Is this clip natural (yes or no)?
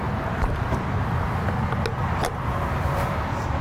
yes